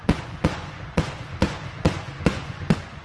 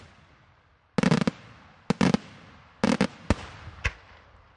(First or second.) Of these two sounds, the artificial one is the first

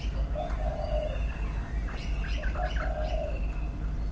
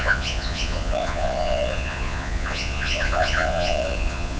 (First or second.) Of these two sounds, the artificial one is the second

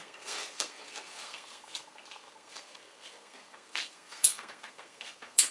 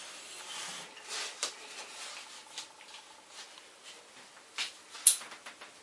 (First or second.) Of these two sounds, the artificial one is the first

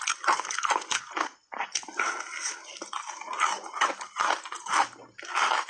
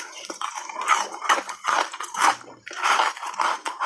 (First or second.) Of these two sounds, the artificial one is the second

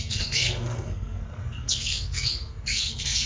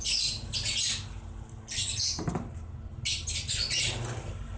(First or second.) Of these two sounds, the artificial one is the first